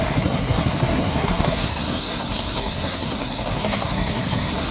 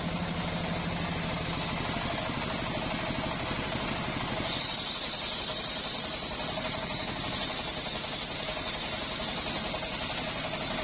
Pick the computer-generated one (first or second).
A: first